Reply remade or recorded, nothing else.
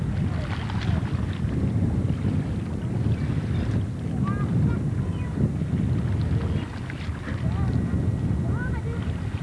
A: recorded